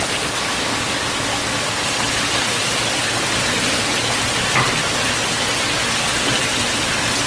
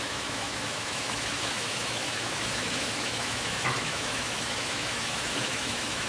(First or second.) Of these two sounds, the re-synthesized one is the second